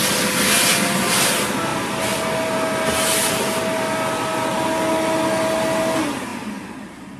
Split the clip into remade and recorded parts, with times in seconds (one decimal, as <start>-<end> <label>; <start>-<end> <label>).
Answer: 0.0-6.3 recorded; 6.3-7.2 remade